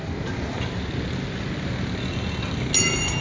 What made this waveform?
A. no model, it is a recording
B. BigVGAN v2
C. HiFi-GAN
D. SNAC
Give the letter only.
A